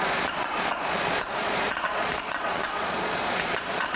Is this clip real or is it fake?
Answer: fake